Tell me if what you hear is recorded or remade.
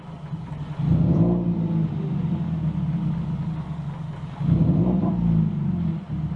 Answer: recorded